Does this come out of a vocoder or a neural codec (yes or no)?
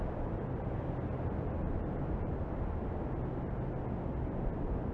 no